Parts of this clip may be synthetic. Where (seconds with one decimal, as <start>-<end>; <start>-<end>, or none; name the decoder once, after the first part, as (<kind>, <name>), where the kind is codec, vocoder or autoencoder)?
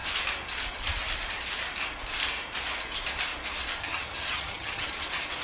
3.8-4.9 (vocoder, HiFi-GAN)